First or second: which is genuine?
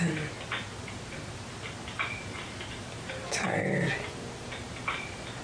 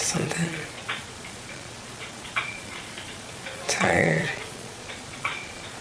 first